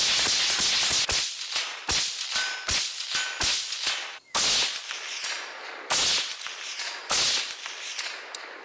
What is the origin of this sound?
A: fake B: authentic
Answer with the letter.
B